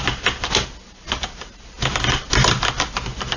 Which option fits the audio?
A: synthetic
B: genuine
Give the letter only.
B